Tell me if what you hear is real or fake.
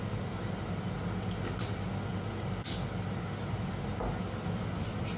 real